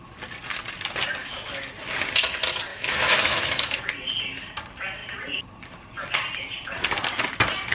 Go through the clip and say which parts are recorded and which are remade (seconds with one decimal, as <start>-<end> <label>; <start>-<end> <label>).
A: 0.0-1.2 recorded; 1.2-1.7 remade; 1.7-2.7 recorded; 2.7-3.8 remade; 3.8-7.7 recorded

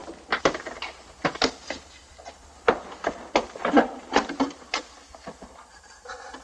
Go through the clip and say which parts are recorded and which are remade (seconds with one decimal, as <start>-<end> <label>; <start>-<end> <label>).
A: 0.0-0.7 recorded; 0.7-2.1 remade; 2.1-3.7 recorded; 3.7-6.4 remade

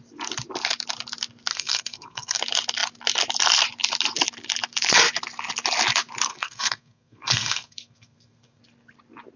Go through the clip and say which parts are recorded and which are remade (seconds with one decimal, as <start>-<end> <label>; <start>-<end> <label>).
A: 0.0-1.5 recorded; 1.5-2.4 remade; 2.4-6.3 recorded; 6.3-8.6 remade; 8.6-9.4 recorded